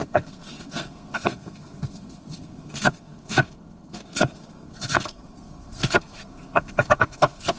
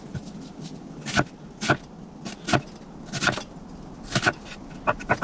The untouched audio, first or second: second